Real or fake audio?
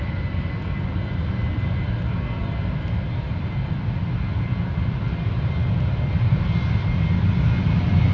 real